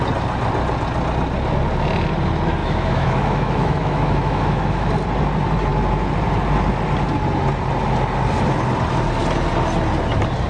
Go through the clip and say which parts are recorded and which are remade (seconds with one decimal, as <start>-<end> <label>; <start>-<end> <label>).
0.0-2.6 recorded; 2.6-4.9 remade; 4.9-10.5 recorded

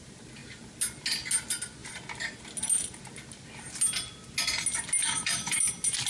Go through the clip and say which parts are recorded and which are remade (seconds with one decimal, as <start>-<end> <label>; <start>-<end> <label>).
0.0-5.0 recorded; 5.0-5.6 remade; 5.6-6.1 recorded

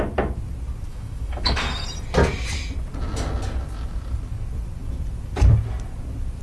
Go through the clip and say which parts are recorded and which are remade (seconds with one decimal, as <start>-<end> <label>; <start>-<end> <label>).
0.0-0.9 recorded; 0.9-1.8 remade; 1.8-6.4 recorded

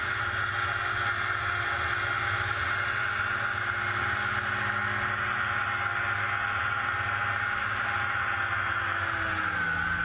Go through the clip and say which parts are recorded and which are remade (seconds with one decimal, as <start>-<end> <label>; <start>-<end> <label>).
0.0-10.0 recorded

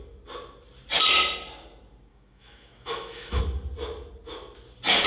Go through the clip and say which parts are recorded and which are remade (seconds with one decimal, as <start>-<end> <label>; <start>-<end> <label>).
0.0-2.1 recorded; 2.1-3.4 remade; 3.4-5.1 recorded